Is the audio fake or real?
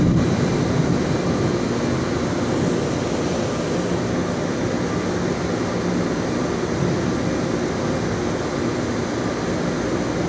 real